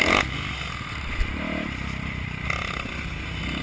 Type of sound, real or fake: real